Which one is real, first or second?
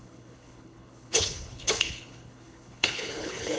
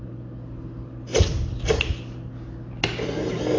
second